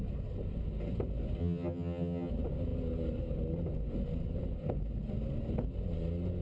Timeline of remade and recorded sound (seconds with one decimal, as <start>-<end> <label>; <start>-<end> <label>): 0.0-1.4 recorded; 1.4-2.3 remade; 2.3-6.4 recorded